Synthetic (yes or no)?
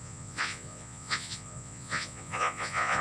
yes